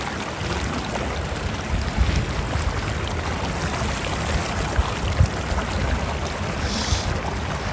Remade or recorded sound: recorded